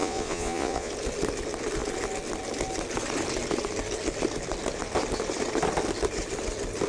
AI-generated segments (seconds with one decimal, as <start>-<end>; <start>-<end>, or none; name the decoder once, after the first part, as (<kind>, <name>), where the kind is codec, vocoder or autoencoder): 0.0-0.9 (vocoder, Vocos)